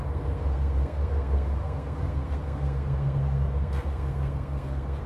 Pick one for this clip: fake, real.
fake